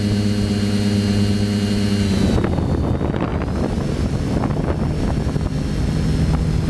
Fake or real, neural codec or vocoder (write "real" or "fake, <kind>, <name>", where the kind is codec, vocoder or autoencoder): real